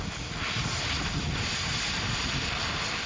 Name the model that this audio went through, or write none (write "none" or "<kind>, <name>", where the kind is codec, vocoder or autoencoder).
none